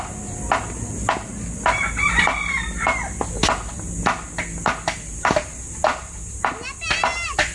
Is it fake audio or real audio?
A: real